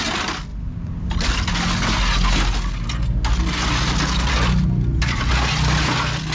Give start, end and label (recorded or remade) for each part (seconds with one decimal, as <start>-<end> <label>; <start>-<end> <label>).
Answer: 0.0-6.3 recorded